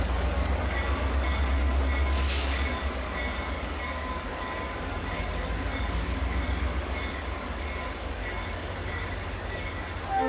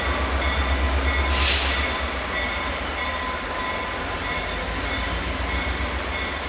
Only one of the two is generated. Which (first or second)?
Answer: first